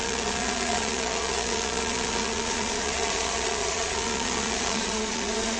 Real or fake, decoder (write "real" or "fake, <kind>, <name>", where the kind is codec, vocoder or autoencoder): fake, vocoder, Vocos